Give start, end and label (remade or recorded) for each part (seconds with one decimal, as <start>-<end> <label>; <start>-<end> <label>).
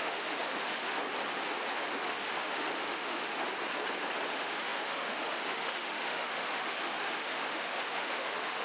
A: 0.0-1.0 remade; 1.0-2.0 recorded; 2.0-3.4 remade; 3.4-4.3 recorded; 4.3-8.6 remade